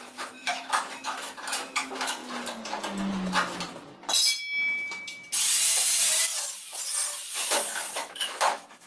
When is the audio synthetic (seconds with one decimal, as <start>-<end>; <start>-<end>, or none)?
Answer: 0.0-2.2; 7.3-8.9